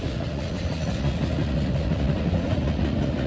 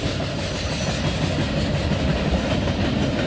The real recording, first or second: second